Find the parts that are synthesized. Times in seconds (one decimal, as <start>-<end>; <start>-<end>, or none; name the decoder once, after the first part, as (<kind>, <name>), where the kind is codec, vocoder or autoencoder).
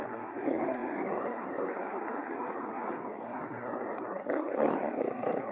0.0-5.5 (codec, SNAC)